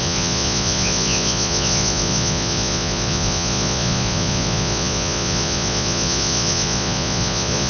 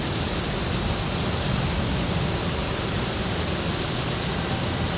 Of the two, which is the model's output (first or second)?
first